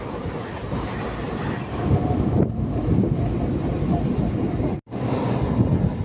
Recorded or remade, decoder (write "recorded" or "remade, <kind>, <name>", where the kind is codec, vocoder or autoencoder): recorded